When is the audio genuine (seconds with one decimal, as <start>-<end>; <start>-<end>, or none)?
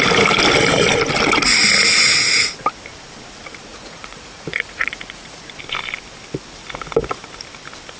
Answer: 0.0-3.7; 5.4-8.0